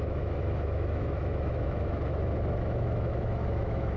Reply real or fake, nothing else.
fake